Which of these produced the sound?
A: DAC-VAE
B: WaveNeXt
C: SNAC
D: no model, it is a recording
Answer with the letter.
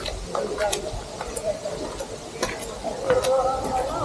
D